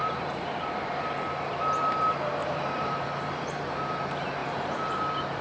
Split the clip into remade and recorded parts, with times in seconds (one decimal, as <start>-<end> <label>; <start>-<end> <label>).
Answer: 0.0-1.1 remade; 1.1-2.4 recorded; 2.4-3.9 remade; 3.9-4.4 recorded; 4.4-5.0 remade; 5.0-5.4 recorded